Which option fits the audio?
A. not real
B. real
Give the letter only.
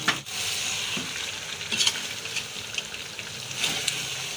B